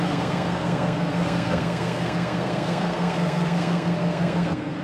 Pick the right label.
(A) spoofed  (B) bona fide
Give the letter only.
A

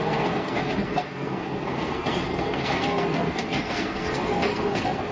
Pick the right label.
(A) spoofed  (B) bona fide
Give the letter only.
A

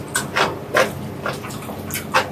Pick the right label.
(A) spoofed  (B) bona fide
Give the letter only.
B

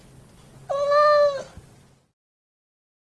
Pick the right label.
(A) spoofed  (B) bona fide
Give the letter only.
B